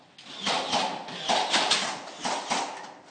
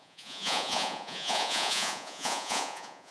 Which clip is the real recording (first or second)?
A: first